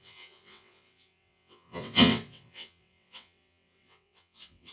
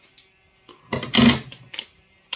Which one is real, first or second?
second